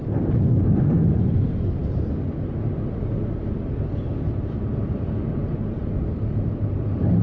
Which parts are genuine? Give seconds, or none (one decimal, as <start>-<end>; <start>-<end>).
none